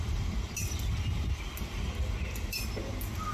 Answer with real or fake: real